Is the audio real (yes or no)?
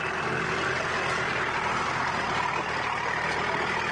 yes